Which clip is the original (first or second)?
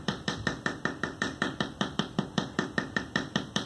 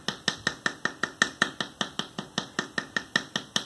second